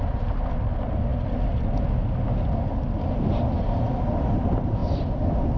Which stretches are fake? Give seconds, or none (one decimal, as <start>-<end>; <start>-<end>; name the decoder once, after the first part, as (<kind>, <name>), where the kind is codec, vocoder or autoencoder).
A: none